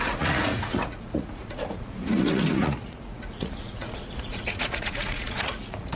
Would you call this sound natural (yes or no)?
no